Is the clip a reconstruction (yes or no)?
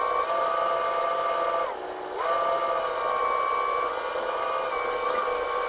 no